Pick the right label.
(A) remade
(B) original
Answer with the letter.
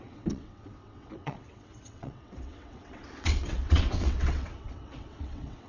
A